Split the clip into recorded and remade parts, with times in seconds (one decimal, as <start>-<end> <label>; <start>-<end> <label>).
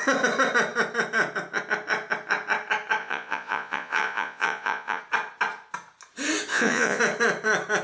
0.0-3.0 recorded; 3.0-5.0 remade; 5.0-6.5 recorded; 6.5-7.0 remade; 7.0-7.8 recorded